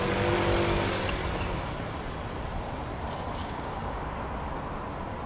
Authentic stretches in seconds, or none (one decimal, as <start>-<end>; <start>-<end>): 0.0-3.4; 4.1-5.3

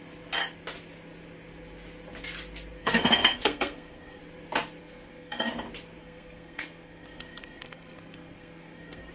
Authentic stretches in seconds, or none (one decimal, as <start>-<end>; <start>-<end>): 0.0-2.8; 4.2-4.8; 5.5-6.0

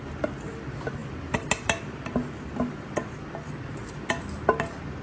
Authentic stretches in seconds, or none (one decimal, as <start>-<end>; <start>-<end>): 0.0-5.0